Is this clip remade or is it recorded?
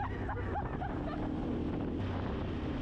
recorded